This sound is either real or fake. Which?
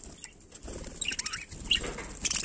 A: real